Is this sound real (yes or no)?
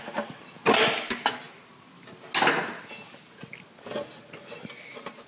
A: yes